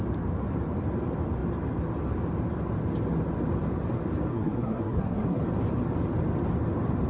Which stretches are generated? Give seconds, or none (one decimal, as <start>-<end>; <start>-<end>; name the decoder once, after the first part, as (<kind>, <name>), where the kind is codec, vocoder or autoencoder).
4.3-5.4 (codec, SNAC)